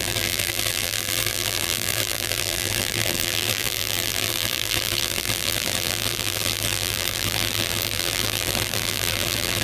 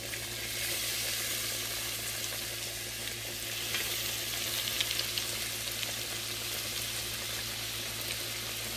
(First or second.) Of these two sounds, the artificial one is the first